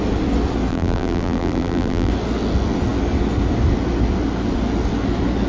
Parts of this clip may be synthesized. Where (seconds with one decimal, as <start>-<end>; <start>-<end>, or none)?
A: 0.7-2.1